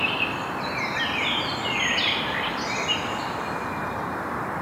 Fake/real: fake